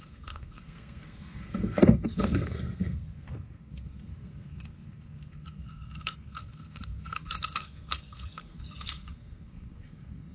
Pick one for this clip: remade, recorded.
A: remade